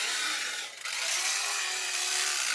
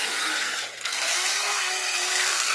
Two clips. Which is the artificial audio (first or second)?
second